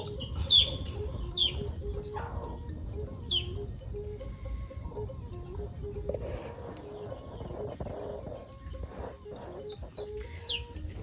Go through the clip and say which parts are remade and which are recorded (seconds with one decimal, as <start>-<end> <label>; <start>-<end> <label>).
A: 0.0-0.4 recorded; 0.4-1.0 remade; 1.0-11.0 recorded